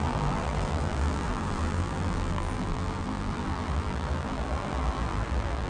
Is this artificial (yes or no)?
yes